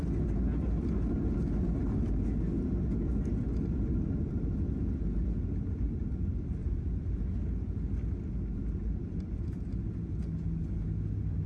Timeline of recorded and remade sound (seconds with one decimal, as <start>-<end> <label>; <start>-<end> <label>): 0.0-6.6 recorded; 6.6-7.4 remade; 7.4-11.5 recorded